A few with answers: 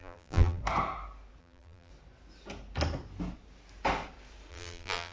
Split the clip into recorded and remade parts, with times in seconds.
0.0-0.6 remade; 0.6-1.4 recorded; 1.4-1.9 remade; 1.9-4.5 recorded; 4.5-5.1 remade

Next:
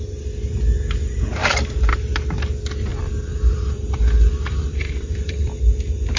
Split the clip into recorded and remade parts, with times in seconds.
0.0-1.4 recorded; 1.4-2.1 remade; 2.1-2.9 recorded; 2.9-5.6 remade; 5.6-6.2 recorded

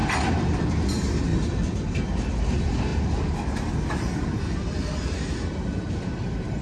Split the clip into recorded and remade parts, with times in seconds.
0.0-0.6 remade; 0.6-1.3 recorded; 1.3-2.0 remade; 2.0-6.6 recorded

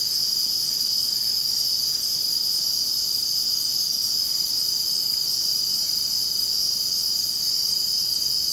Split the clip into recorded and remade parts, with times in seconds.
0.0-8.5 recorded

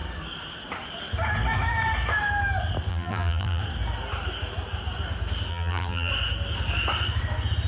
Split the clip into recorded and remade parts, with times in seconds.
0.0-2.9 recorded; 2.9-3.6 remade; 3.6-5.5 recorded; 5.5-6.1 remade; 6.1-7.7 recorded

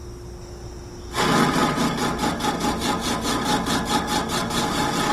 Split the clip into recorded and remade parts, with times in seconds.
0.0-3.0 recorded; 3.0-3.8 remade; 3.8-5.1 recorded